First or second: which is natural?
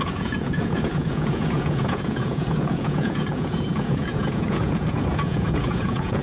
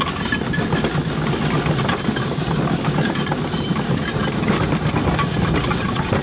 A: second